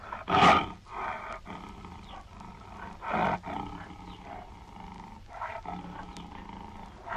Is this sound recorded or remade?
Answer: recorded